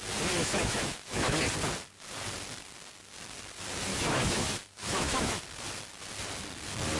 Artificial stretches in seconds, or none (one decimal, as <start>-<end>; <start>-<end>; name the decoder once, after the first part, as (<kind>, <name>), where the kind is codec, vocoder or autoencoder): 0.4-1.4 (autoencoder, DAC-VAE); 3.9-5.4